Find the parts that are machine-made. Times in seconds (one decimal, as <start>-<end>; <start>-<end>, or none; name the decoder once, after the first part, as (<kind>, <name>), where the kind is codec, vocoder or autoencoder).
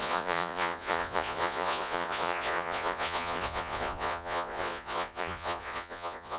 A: 0.0-6.4 (vocoder, Vocos)